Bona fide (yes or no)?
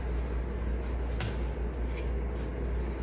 yes